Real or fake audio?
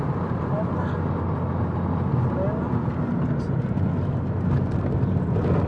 real